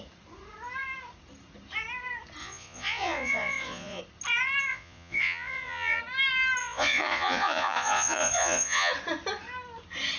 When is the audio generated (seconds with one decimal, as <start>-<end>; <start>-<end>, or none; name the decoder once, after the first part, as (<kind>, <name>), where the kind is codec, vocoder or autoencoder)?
2.4-4.0 (vocoder, Vocos); 4.7-6.0; 6.6-8.9